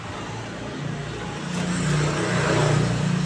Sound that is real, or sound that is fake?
real